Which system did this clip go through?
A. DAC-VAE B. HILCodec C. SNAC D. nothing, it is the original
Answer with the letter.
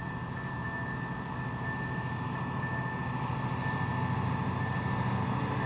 D